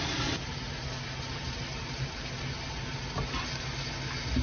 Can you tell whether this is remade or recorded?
recorded